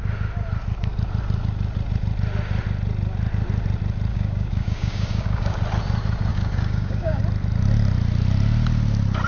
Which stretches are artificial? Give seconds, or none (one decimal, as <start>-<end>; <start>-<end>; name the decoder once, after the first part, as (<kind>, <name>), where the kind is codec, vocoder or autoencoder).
4.1-5.6 (codec, DAC); 6.3-7.2